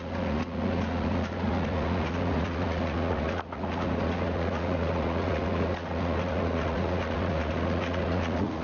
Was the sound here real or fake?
fake